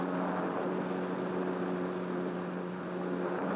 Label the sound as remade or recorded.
recorded